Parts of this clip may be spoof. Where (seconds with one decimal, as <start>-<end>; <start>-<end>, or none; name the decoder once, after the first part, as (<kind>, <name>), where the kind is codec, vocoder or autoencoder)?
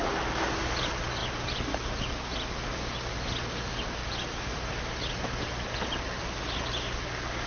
none